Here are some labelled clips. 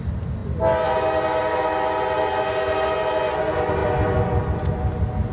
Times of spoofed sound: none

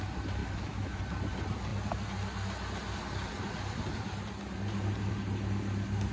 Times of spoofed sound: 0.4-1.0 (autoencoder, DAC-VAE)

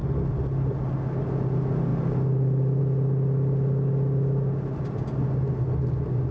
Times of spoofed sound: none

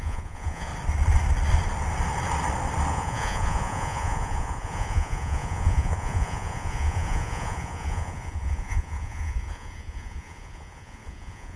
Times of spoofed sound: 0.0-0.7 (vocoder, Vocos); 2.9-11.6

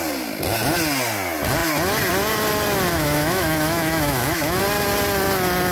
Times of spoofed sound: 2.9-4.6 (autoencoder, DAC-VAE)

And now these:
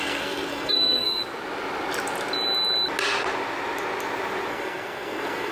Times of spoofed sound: 0.0-1.2 (codec, SNAC); 4.5-5.5

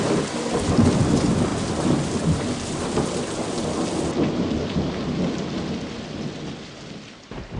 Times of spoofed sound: none

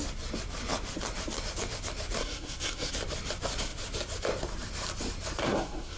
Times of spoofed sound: 2.2-2.9 (codec, SNAC); 5.4-6.0